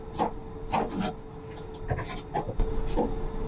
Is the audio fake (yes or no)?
no